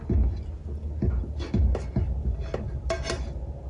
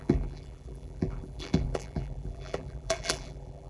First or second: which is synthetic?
second